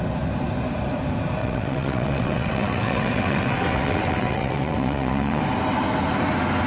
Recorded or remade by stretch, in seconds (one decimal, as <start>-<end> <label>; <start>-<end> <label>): 0.0-1.4 recorded; 1.4-5.4 remade; 5.4-6.7 recorded